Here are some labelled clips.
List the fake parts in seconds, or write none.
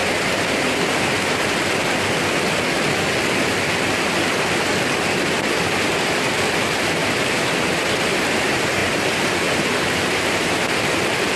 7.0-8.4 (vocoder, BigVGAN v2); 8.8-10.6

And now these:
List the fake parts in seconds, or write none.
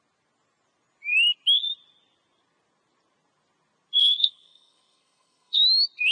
4.0-5.6 (codec, SNAC)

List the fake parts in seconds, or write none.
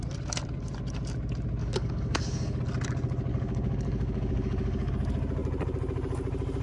1.6-2.6 (codec, DAC); 3.3-4.9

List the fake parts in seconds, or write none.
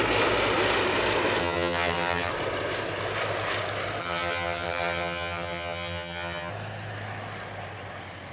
1.4-2.3 (vocoder, HiFi-GAN); 4.0-6.5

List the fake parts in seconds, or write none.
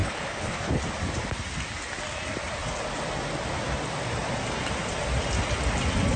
0.0-0.8 (codec, HILCodec)